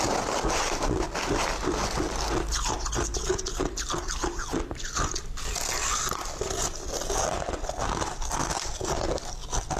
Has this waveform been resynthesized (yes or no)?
no